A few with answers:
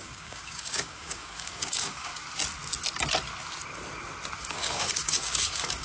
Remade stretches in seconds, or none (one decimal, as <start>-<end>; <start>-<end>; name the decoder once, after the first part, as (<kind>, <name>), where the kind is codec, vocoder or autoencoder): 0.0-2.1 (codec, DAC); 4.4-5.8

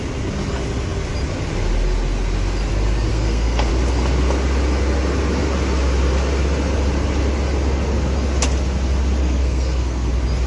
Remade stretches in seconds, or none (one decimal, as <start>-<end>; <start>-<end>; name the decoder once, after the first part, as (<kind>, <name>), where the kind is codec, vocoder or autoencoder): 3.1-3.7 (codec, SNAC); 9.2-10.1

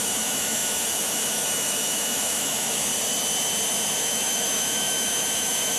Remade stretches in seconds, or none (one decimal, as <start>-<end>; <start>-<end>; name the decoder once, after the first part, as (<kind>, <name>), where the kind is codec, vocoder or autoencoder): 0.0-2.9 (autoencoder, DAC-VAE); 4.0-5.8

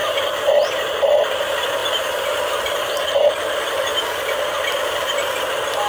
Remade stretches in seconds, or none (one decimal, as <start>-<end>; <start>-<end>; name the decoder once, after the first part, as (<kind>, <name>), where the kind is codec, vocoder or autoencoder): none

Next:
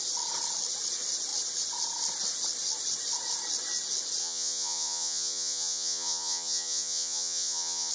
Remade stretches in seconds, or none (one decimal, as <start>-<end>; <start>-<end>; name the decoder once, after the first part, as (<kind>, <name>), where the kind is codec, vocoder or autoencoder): 4.2-7.9 (vocoder, Vocos)

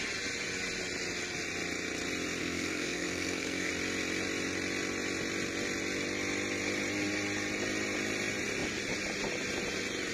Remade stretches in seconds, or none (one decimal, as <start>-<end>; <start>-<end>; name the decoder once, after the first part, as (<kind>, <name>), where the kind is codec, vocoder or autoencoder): 2.4-3.7 (codec, SNAC)

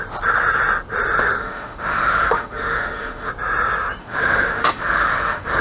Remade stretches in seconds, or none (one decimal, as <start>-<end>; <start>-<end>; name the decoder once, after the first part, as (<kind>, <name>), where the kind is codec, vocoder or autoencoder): 1.4-3.3 (autoencoder, DAC-VAE); 4.0-5.6